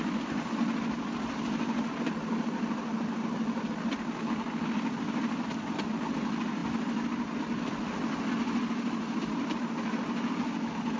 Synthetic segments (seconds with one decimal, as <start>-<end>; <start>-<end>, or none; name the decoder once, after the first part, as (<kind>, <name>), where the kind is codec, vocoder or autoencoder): none